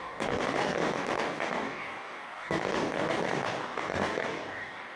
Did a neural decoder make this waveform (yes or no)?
yes